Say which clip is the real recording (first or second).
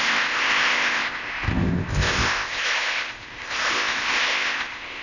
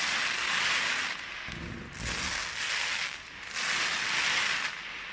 second